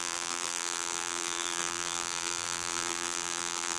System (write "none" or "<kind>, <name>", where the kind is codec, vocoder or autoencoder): vocoder, BigVGAN v2